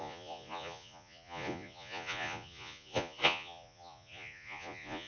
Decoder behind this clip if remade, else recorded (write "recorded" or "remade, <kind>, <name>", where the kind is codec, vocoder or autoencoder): remade, vocoder, Vocos